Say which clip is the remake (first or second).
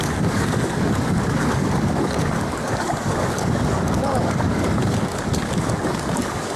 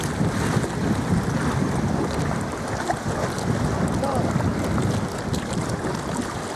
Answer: first